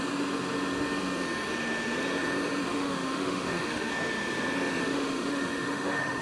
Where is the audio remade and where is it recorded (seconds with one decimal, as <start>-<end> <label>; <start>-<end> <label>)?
0.0-2.7 recorded; 2.7-3.9 remade; 3.9-4.8 recorded; 4.8-6.2 remade